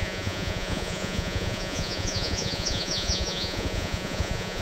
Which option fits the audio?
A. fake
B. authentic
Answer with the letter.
A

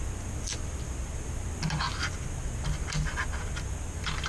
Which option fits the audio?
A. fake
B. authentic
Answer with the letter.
B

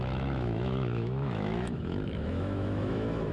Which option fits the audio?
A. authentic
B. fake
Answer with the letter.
B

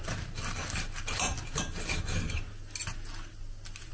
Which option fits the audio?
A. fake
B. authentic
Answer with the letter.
B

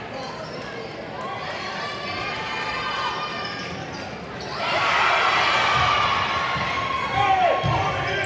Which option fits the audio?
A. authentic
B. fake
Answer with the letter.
A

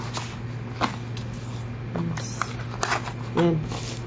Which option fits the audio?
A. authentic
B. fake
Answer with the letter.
A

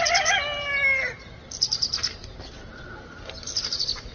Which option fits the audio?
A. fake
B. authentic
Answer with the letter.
B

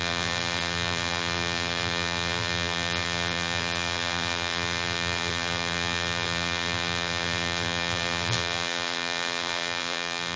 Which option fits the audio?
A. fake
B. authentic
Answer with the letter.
A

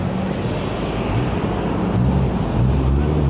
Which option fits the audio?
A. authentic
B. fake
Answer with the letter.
A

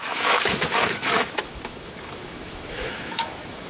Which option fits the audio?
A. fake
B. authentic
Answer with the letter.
A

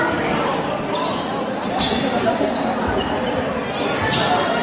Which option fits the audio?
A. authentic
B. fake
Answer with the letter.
A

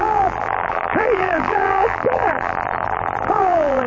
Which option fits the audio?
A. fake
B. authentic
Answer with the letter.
A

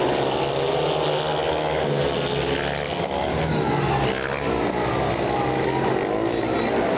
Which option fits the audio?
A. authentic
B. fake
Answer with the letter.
A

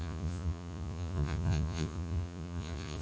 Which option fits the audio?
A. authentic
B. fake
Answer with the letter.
B